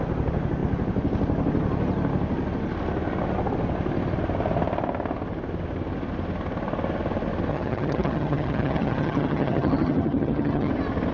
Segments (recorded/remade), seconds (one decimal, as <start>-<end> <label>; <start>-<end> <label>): 0.0-7.5 recorded; 7.5-10.7 remade; 10.7-11.1 recorded